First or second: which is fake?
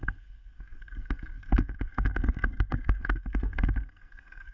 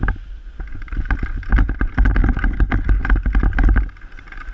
first